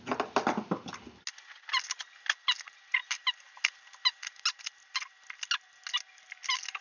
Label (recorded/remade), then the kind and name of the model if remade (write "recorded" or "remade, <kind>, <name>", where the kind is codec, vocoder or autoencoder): recorded